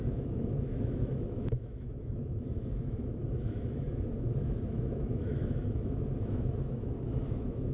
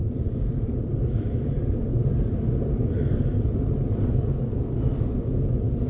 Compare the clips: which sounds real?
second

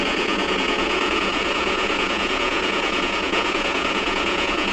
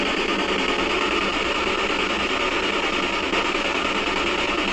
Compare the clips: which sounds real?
second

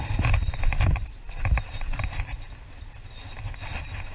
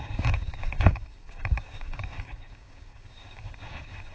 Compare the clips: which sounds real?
first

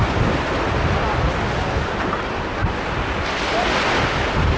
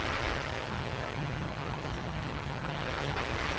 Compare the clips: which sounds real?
first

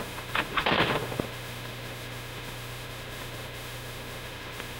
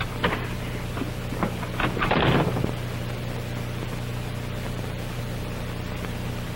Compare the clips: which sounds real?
second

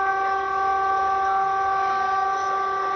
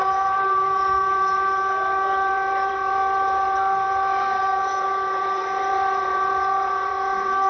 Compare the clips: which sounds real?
first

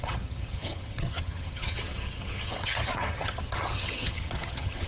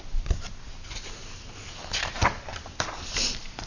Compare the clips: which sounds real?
second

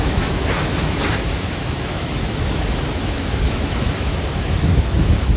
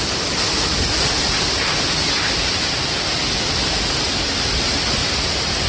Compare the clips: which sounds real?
second